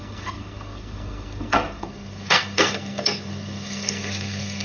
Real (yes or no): no